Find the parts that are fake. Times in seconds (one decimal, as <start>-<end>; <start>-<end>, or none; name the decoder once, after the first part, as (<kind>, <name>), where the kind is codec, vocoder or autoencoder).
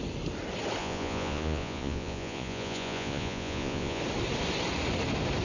0.8-4.0 (vocoder, Vocos)